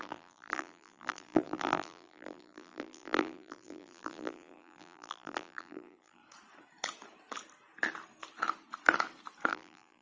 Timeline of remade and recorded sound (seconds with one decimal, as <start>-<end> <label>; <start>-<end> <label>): 0.0-6.2 remade; 6.2-9.5 recorded; 9.5-10.0 remade